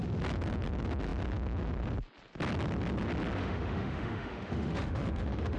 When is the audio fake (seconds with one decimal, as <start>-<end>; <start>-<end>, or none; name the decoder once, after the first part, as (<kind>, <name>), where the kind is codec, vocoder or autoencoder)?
3.4-5.6 (autoencoder, DAC-VAE)